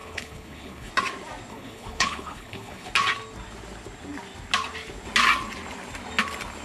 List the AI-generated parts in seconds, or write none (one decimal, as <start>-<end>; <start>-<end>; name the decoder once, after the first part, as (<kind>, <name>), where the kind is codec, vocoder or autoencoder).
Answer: 0.0-0.9 (codec, HILCodec); 1.5-2.9